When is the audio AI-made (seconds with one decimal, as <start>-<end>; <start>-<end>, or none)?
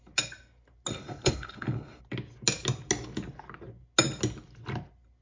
0.9-2.0